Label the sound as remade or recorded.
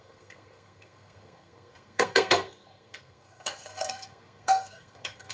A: remade